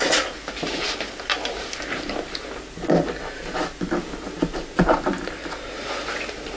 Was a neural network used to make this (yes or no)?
no